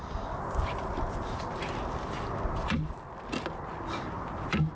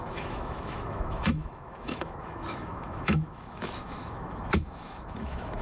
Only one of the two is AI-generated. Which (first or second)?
second